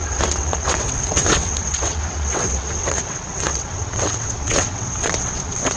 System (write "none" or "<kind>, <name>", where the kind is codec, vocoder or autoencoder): vocoder, WaveNeXt